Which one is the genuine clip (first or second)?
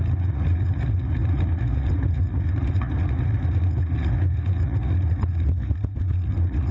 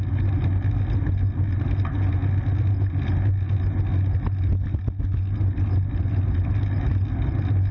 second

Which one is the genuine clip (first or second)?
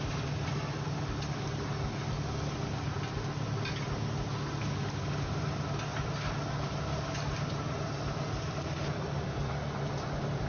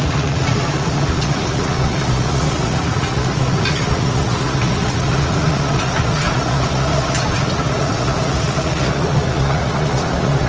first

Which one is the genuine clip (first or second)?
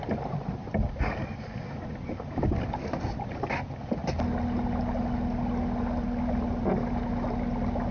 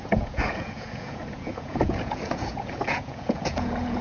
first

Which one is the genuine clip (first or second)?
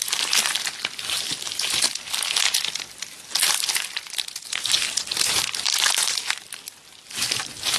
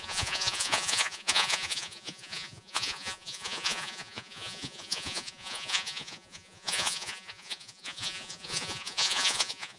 first